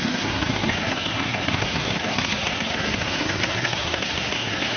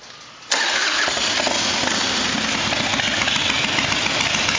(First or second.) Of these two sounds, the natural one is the second